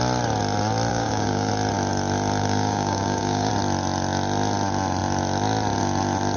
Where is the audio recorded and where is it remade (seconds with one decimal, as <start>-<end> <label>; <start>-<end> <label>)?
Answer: 0.0-0.9 recorded; 0.9-1.5 remade; 1.5-2.4 recorded; 2.4-3.5 remade; 3.5-6.4 recorded

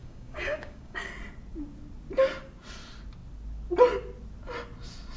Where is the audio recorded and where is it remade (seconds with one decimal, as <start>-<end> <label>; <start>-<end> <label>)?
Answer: 0.0-1.1 remade; 1.1-5.2 recorded

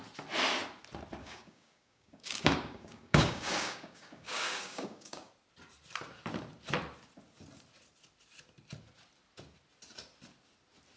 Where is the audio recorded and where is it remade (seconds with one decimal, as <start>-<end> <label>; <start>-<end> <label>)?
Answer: 0.0-1.2 recorded; 1.2-5.3 remade; 5.3-11.0 recorded